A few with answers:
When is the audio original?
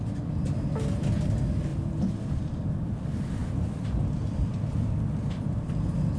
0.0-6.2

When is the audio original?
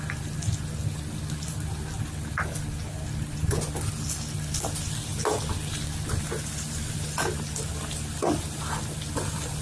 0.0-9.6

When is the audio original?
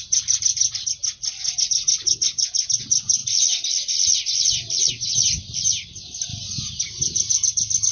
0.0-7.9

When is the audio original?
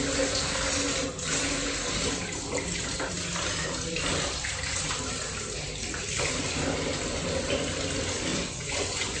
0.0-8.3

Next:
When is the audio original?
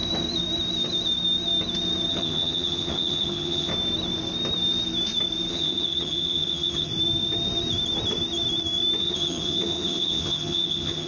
0.0-2.1; 3.7-5.5; 6.9-9.0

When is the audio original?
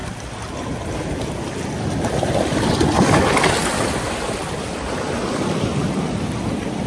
0.0-6.9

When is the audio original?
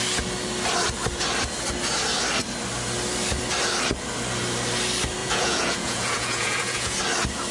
0.0-5.2; 7.0-7.5